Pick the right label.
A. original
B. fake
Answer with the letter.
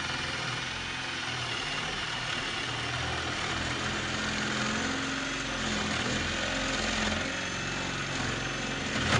A